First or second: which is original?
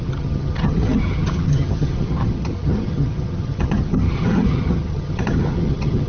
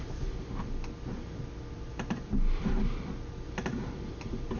second